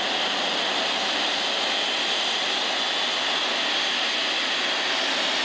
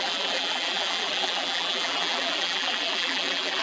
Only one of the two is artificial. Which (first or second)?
second